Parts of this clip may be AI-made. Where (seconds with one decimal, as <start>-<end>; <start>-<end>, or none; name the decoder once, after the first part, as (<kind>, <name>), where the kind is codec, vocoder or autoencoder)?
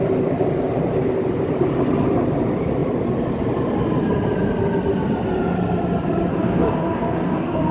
6.3-7.7 (codec, DAC)